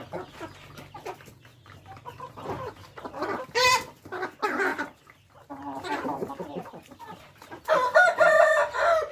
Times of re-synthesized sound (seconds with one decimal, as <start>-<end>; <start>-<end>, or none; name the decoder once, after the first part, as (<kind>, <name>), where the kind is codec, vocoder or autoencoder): 1.5-3.4 (vocoder, BigVGAN v2); 4.7-7.0